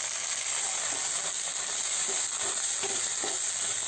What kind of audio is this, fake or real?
real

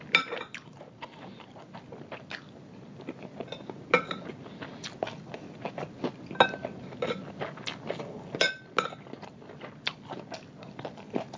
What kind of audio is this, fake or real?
real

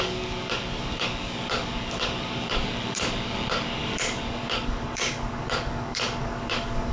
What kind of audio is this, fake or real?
fake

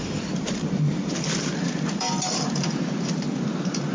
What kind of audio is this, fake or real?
fake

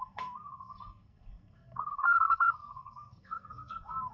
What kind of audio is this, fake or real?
fake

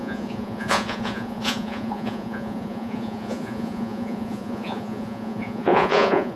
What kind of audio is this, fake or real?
fake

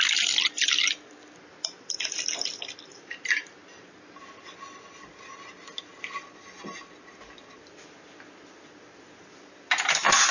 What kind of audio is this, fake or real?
real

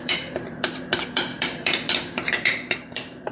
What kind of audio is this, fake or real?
fake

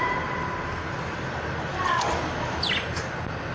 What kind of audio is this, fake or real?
real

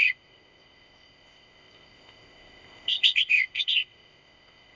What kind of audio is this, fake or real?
fake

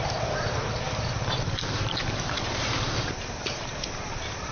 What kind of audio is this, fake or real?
fake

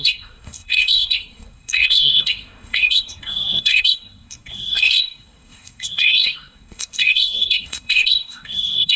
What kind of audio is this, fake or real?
fake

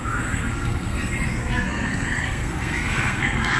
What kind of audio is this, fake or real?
fake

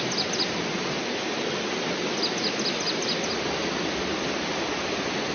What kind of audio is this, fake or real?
real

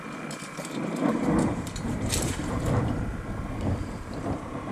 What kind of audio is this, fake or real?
fake